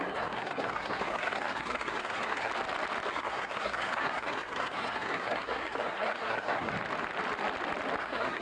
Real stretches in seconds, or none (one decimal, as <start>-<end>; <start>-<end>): 2.5-3.1; 6.7-8.0